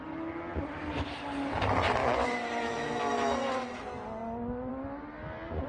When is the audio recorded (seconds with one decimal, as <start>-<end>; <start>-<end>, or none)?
0.0-2.0; 3.0-5.7